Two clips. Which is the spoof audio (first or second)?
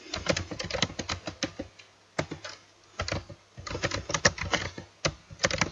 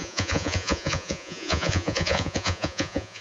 second